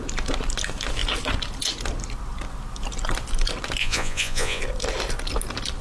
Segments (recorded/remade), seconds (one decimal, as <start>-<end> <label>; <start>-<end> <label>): 0.0-3.8 recorded; 3.8-4.6 remade; 4.6-5.8 recorded